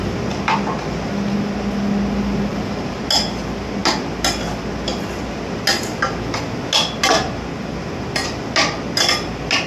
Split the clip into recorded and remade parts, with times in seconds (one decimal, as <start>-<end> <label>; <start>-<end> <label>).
0.0-2.5 recorded; 2.5-3.0 remade; 3.0-9.7 recorded

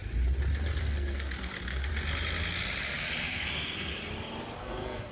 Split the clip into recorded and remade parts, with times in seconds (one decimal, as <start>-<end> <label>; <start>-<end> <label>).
0.0-0.8 recorded; 0.8-1.9 remade; 1.9-3.2 recorded; 3.2-3.9 remade; 3.9-4.6 recorded; 4.6-5.1 remade

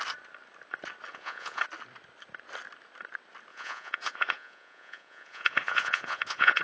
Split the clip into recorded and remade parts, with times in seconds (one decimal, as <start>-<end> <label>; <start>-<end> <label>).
0.0-1.1 recorded; 1.1-1.6 remade; 1.6-3.5 recorded; 3.5-6.6 remade

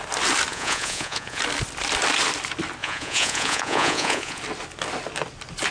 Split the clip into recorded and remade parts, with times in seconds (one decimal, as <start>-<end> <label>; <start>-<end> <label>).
0.0-0.5 recorded; 0.5-1.4 remade; 1.4-2.8 recorded; 2.8-4.4 remade; 4.4-5.7 recorded

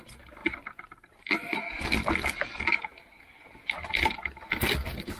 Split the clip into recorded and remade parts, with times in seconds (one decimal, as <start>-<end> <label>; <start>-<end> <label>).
0.0-5.2 recorded

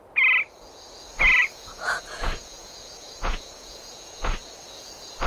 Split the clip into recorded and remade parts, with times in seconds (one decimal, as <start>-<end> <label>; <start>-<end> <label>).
0.0-1.4 recorded; 1.4-4.6 remade; 4.6-5.3 recorded

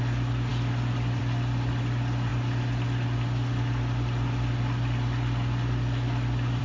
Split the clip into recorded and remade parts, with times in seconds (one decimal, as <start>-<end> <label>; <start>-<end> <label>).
0.0-6.6 recorded

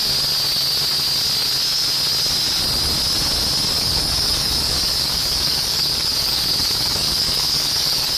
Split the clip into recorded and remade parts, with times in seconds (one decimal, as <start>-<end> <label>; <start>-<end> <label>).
0.0-3.7 recorded; 3.7-8.2 remade